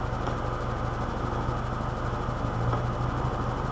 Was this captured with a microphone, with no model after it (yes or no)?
yes